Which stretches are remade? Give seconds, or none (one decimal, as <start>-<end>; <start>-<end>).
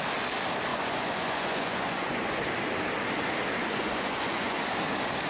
0.7-2.4; 3.6-4.6